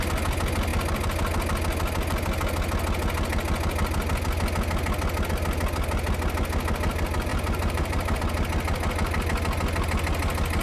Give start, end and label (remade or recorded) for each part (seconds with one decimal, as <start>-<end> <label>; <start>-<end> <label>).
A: 0.0-7.3 recorded; 7.3-8.2 remade; 8.2-10.6 recorded